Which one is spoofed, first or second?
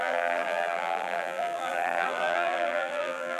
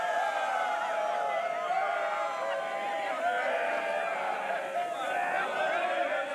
first